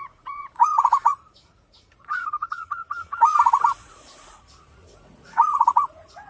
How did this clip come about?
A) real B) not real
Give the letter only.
B